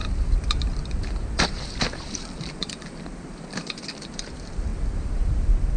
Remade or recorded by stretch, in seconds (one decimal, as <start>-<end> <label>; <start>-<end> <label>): 0.0-5.8 remade